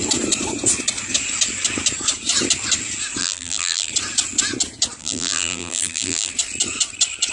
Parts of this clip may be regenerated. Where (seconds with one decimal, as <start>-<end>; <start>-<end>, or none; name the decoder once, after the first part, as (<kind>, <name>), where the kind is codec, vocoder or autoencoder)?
3.2-3.9 (vocoder, BigVGAN v2); 5.0-6.3